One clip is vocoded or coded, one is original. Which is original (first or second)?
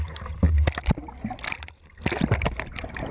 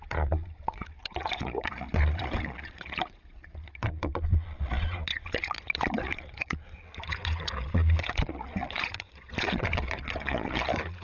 first